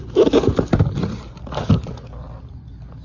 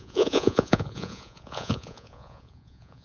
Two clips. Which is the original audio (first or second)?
first